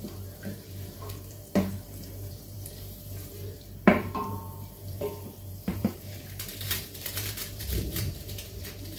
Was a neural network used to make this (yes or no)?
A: yes